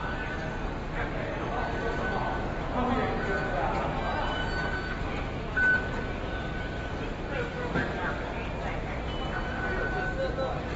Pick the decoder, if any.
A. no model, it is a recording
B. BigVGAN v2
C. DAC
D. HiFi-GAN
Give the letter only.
A